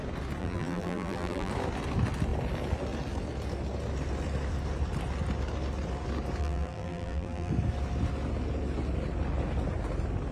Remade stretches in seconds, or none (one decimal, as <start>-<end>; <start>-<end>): 0.4-1.5; 6.4-7.5